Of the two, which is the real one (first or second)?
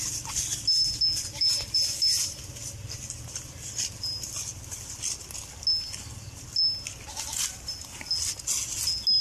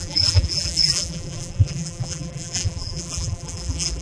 first